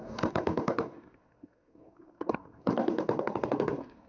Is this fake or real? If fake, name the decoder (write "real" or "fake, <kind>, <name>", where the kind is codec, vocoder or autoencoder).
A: fake, codec, SNAC